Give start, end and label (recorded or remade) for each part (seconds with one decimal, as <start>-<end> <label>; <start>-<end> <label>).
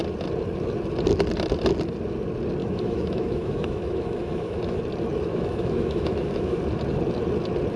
0.0-2.6 recorded; 2.6-4.8 remade; 4.8-5.3 recorded; 5.3-6.6 remade; 6.6-7.8 recorded